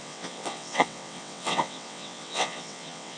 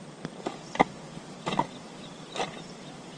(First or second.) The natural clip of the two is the second